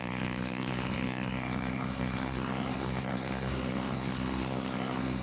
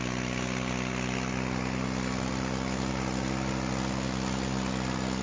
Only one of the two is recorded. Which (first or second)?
second